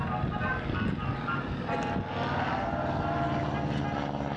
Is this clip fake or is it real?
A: real